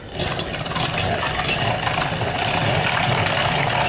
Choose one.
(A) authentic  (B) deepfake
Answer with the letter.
A